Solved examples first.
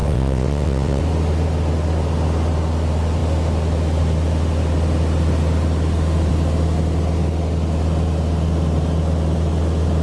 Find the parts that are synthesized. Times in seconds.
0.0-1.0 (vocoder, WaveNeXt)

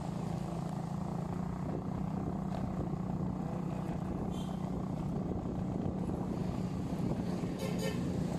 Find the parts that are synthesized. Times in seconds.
none

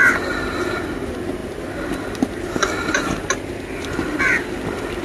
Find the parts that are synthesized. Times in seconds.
none

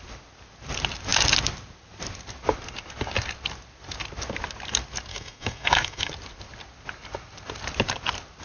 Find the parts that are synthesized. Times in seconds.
5.1-6.1 (autoencoder, DAC-VAE)

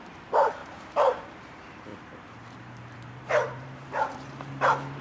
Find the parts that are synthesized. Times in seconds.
0.6-1.3 (vocoder, BigVGAN v2); 1.9-5.0

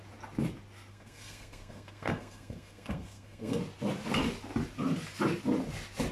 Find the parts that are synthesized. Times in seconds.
0.9-3.6 (codec, SNAC)

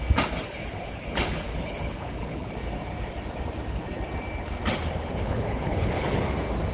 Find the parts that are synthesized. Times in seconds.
0.4-2.5 (codec, HILCodec); 5.1-6.2